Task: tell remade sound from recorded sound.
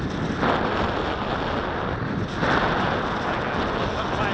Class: recorded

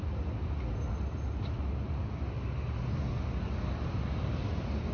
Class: recorded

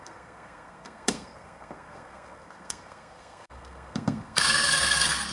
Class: remade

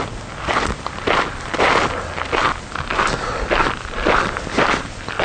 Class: recorded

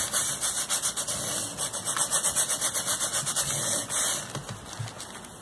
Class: recorded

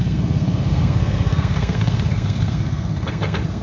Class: remade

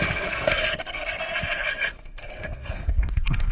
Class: remade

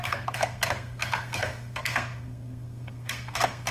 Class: remade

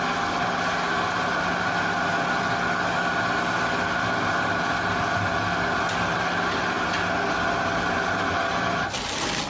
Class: recorded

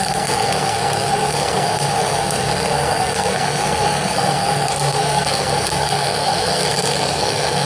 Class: remade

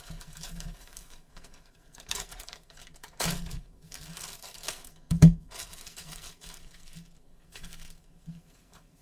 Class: remade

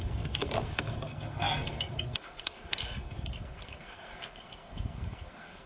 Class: remade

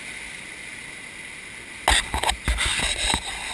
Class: recorded